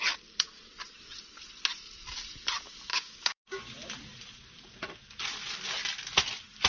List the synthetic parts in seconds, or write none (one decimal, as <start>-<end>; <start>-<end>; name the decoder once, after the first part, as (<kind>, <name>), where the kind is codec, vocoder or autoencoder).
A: 2.9-3.6 (codec, DAC)